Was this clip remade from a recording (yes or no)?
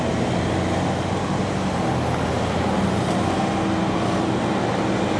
no